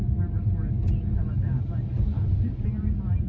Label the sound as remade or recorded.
recorded